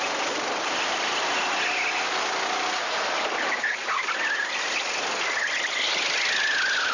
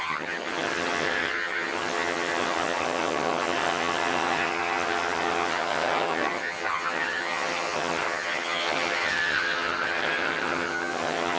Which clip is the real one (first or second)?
first